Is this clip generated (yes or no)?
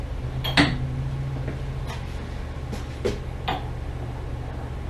no